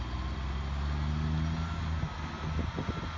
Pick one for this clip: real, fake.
real